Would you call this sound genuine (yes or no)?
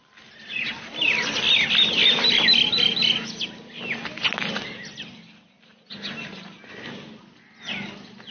yes